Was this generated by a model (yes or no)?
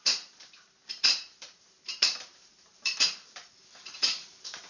yes